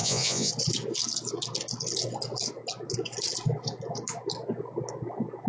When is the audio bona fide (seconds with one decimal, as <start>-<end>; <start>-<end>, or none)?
0.5-5.5